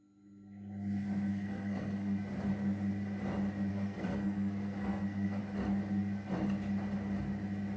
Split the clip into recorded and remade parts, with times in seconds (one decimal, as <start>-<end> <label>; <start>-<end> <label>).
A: 0.0-1.3 recorded; 1.3-2.2 remade; 2.2-3.7 recorded; 3.7-5.4 remade; 5.4-7.8 recorded